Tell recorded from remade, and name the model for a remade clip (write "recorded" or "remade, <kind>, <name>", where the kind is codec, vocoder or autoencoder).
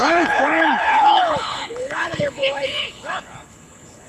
remade, codec, HILCodec